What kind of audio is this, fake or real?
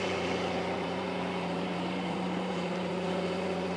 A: fake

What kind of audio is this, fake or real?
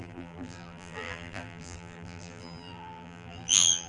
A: fake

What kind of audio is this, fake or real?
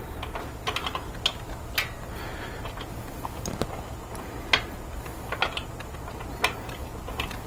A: real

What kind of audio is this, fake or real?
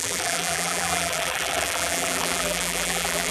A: fake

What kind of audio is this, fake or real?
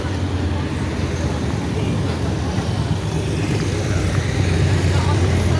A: real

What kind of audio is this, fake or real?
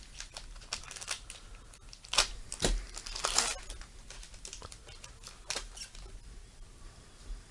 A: real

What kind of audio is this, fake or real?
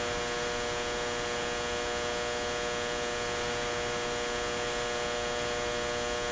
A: real